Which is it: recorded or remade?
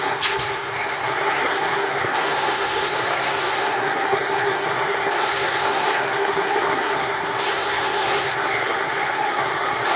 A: remade